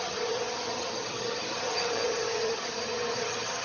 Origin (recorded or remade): remade